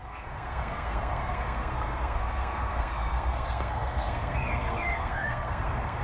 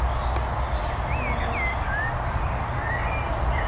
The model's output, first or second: first